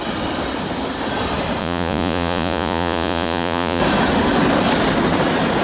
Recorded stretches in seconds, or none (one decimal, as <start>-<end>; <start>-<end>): 0.0-1.6; 3.8-5.6